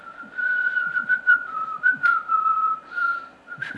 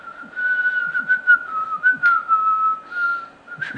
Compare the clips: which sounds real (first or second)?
second